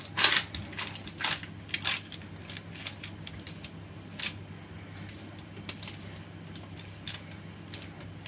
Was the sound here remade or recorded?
recorded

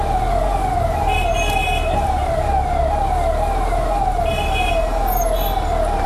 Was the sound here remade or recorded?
recorded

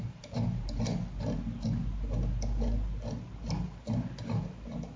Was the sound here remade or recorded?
recorded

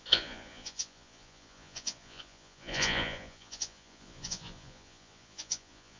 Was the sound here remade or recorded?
remade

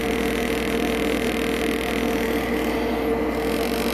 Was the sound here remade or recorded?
recorded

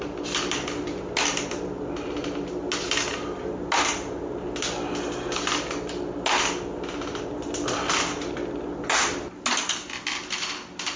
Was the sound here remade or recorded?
recorded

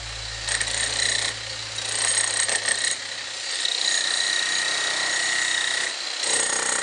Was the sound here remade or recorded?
recorded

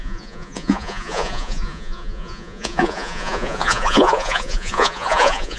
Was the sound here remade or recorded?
remade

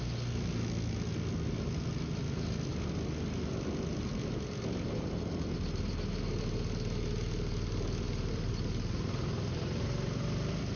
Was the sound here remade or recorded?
recorded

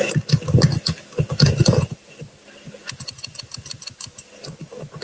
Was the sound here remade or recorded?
recorded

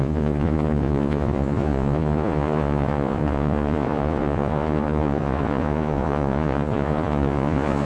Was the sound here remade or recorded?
remade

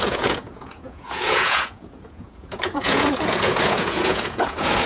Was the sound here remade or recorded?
remade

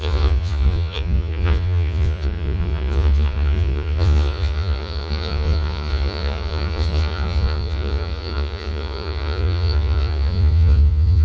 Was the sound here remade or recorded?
remade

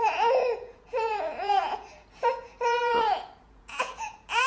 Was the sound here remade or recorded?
remade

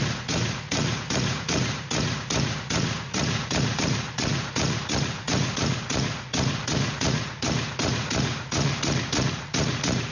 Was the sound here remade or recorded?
remade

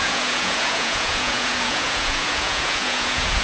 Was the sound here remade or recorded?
remade